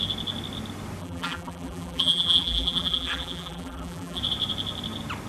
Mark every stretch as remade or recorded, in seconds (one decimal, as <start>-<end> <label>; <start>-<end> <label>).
0.0-1.0 recorded; 1.0-4.2 remade; 4.2-5.3 recorded